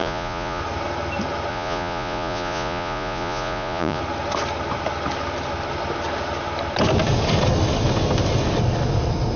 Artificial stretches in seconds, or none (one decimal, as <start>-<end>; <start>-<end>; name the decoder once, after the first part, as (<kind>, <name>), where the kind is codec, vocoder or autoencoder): 0.0-0.6 (vocoder, Vocos); 1.5-4.0